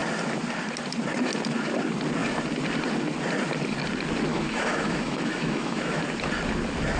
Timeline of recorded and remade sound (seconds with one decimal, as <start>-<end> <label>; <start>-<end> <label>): 0.0-4.3 recorded; 4.3-6.0 remade; 6.0-7.0 recorded